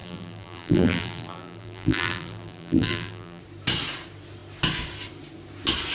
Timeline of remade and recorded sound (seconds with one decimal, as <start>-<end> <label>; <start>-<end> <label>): 0.0-3.4 remade; 3.4-5.9 recorded